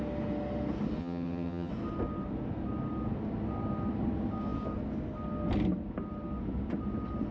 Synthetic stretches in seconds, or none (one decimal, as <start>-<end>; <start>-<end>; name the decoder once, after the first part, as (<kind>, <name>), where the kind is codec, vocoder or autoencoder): 1.0-1.7 (vocoder, HiFi-GAN)